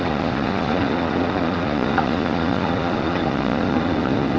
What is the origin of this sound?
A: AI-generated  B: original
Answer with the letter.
A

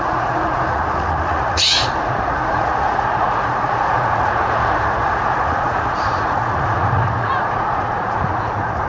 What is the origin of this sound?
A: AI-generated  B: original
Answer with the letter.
A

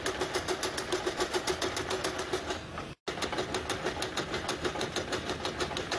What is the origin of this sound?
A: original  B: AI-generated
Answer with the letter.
A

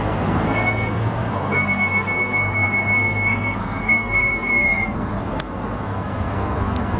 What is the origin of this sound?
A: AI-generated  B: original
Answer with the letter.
A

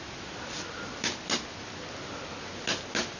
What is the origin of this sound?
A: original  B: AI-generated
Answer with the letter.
A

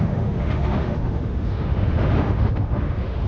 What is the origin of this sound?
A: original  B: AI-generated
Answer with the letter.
B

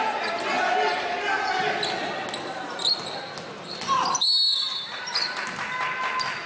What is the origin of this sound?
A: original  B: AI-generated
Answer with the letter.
A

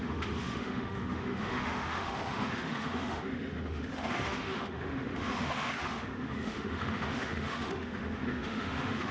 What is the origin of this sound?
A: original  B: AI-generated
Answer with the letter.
B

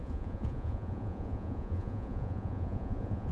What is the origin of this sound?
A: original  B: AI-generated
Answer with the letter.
B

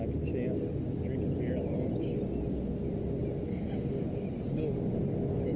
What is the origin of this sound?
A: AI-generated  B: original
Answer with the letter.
B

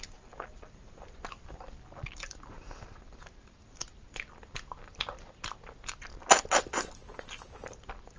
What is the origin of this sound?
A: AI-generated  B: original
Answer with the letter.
B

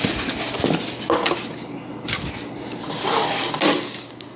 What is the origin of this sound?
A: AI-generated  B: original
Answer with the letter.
B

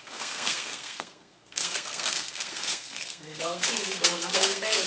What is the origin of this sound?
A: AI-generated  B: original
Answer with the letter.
A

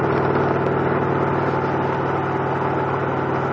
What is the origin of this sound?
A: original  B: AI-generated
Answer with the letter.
A